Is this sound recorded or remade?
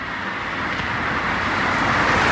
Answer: recorded